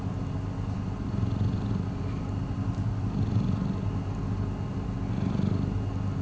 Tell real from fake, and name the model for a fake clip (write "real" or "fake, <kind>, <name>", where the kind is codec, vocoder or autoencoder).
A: real